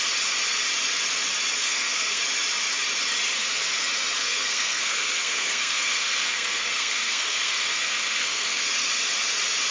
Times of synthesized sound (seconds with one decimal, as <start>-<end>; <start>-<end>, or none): 1.6-2.2; 4.2-8.7

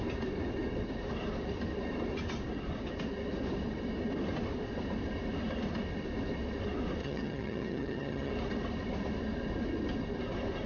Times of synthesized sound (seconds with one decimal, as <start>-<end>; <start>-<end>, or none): 7.0-8.3

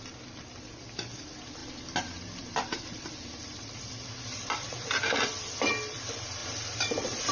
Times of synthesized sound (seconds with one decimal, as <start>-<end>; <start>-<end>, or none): 1.6-6.0; 6.4-7.3

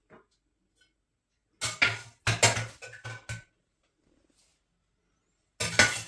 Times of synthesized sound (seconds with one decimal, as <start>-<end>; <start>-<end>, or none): none